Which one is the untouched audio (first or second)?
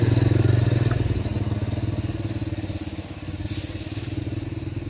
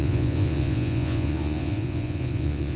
first